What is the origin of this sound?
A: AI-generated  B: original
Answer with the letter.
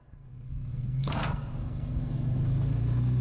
A